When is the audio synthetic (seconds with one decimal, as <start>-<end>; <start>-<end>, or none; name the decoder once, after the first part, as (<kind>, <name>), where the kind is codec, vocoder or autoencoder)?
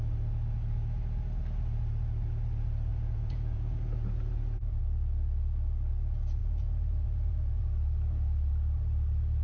2.9-4.8 (vocoder, Vocos); 6.4-7.6